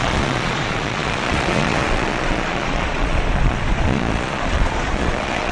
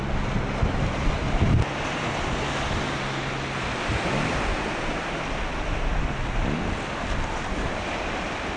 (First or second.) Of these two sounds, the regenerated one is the first